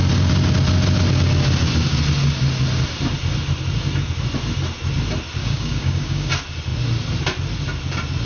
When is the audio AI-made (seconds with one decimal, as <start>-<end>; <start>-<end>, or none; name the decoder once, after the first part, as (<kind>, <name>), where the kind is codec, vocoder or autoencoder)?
5.4-6.3 (codec, DAC)